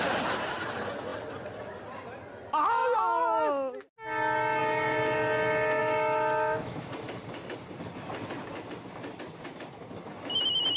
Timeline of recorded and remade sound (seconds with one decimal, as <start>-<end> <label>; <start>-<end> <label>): 0.0-5.8 recorded; 5.8-6.9 remade; 6.9-10.8 recorded